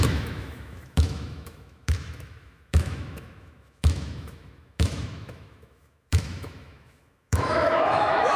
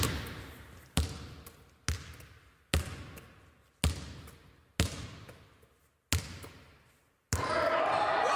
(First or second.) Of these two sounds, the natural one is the second